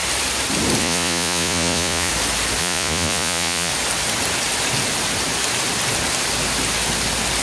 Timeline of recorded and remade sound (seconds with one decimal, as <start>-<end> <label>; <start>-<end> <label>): 0.0-0.8 recorded; 0.8-2.1 remade; 2.1-2.6 recorded; 2.6-3.7 remade; 3.7-7.4 recorded